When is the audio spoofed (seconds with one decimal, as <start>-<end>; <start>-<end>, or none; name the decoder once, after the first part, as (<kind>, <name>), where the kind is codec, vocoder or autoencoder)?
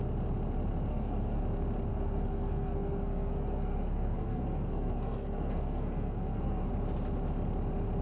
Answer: 0.9-1.4 (codec, SNAC); 1.9-6.7